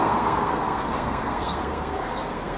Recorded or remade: remade